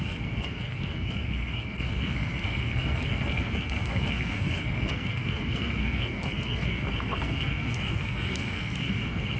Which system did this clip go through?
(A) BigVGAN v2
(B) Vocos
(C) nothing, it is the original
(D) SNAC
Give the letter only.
D